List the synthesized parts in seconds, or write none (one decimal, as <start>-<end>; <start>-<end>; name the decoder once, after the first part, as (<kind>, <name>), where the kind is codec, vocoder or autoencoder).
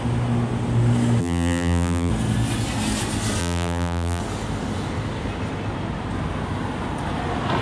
1.2-2.1 (vocoder, BigVGAN v2); 3.4-4.2